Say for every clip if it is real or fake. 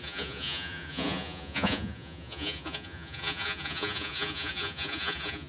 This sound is fake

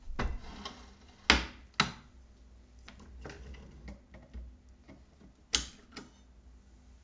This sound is real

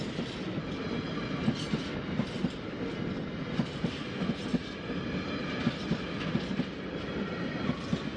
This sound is real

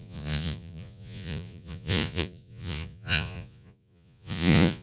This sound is fake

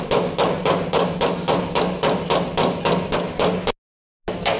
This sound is real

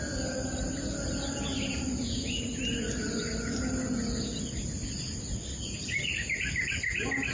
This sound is real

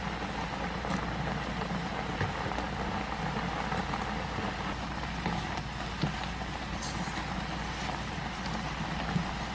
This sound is real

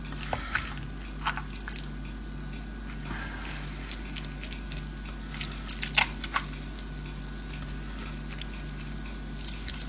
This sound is real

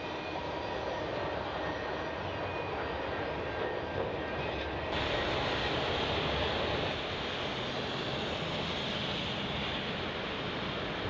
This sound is real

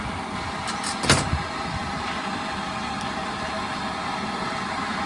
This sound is real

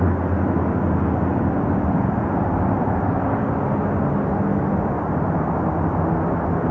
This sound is real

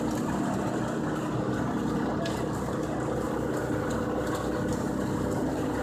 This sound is real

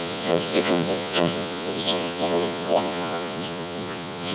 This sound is fake